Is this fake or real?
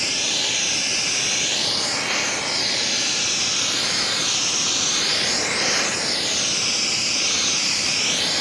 real